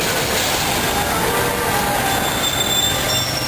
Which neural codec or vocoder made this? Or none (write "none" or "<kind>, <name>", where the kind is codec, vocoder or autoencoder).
none